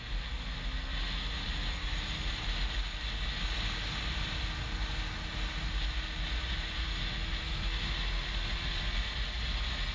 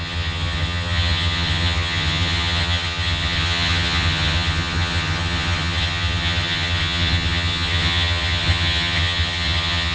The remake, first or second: second